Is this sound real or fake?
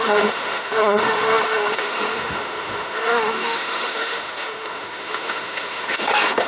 fake